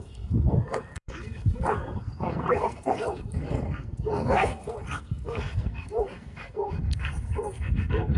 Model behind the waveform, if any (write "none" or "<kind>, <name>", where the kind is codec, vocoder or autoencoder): codec, SNAC